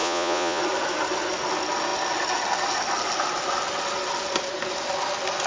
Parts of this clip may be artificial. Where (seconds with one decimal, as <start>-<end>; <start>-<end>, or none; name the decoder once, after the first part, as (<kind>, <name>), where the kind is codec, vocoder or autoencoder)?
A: 0.0-0.6 (vocoder, Vocos)